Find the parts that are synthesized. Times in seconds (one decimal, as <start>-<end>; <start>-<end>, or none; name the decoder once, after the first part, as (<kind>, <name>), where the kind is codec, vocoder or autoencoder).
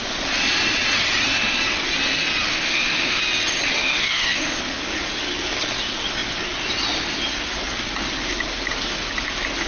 2.5-3.2 (autoencoder, DAC-VAE); 3.8-4.6